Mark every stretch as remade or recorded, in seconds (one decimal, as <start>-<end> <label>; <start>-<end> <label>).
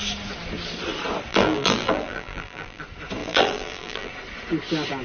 0.0-1.3 recorded; 1.3-2.8 remade; 2.8-3.2 recorded; 3.2-4.1 remade; 4.1-5.0 recorded